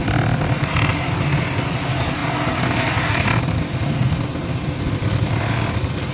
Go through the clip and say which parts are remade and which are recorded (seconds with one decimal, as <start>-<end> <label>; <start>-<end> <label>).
0.0-6.1 recorded